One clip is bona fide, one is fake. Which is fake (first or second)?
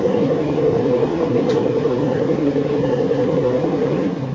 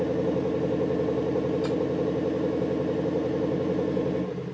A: first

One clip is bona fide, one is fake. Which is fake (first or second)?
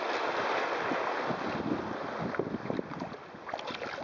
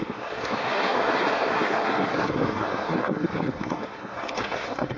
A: second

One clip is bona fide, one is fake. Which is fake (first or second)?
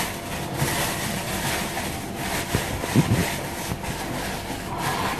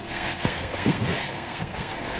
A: second